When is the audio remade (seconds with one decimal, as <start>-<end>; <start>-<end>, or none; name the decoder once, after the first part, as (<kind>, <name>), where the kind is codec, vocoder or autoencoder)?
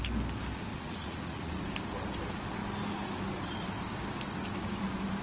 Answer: 0.7-1.5 (vocoder, Vocos)